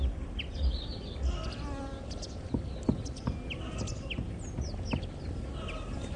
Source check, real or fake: real